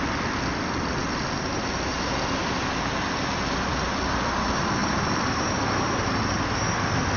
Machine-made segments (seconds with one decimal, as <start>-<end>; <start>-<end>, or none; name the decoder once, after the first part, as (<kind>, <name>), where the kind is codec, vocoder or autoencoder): none